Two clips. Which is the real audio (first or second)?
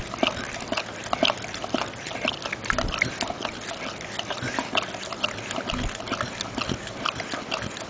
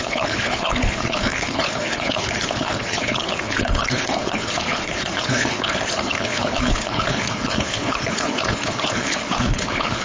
first